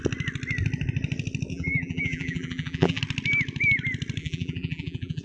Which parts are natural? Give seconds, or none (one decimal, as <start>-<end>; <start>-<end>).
0.0-1.5; 3.0-4.2